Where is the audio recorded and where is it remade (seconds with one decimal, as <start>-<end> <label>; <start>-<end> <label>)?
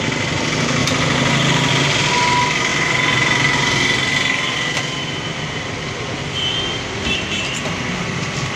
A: 0.0-8.6 recorded